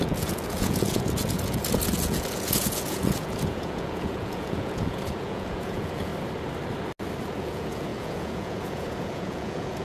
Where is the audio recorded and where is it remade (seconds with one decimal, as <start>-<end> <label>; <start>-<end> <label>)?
0.0-6.1 remade; 6.1-7.4 recorded; 7.4-9.8 remade